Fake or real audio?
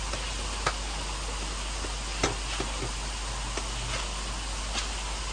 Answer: real